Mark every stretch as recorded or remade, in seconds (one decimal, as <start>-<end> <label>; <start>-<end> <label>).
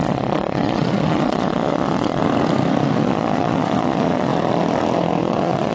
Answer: 0.0-2.2 remade; 2.2-2.9 recorded; 2.9-4.3 remade; 4.3-5.2 recorded; 5.2-5.7 remade